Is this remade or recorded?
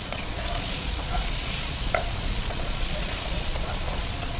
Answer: remade